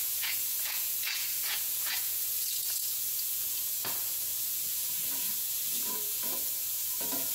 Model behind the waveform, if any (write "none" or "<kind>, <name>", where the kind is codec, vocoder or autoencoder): vocoder, Vocos